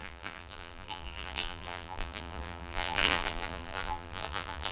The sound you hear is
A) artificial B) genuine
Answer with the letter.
A